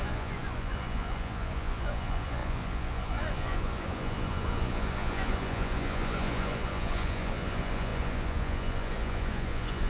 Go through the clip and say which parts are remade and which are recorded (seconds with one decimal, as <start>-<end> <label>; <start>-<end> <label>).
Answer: 0.0-9.9 remade